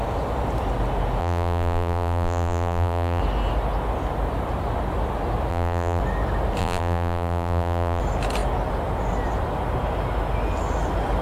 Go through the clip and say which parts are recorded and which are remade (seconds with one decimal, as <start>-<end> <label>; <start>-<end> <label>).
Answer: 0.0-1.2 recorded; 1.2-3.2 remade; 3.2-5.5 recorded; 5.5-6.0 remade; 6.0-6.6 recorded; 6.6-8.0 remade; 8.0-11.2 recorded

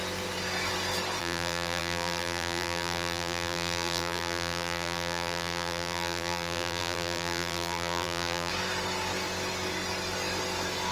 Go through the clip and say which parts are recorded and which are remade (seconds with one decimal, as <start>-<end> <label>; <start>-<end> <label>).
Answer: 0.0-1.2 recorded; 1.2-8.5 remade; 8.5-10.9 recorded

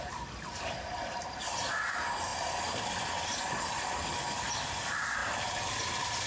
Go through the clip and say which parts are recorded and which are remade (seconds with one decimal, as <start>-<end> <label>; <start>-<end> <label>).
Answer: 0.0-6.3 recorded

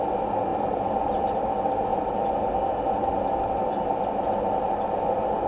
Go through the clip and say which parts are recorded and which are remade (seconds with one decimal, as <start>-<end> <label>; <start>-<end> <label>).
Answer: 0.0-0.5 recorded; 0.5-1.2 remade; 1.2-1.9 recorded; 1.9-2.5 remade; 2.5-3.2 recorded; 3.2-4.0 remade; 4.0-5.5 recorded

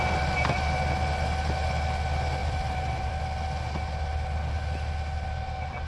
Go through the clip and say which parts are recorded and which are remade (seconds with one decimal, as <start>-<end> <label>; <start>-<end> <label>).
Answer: 0.0-2.4 recorded; 2.4-3.1 remade; 3.1-5.9 recorded

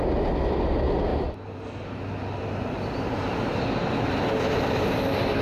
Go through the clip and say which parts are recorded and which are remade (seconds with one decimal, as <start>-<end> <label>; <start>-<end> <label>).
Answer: 0.0-5.4 recorded

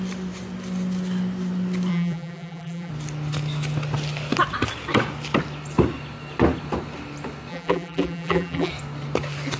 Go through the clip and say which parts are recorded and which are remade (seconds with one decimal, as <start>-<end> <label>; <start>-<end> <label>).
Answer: 0.0-1.9 recorded; 1.9-2.9 remade; 2.9-7.5 recorded; 7.5-8.7 remade; 8.7-9.6 recorded

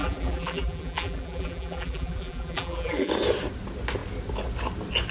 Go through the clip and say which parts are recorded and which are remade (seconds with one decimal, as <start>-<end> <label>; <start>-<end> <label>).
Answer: 0.0-3.1 remade; 3.1-5.1 recorded